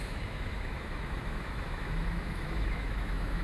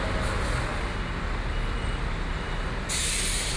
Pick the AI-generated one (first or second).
first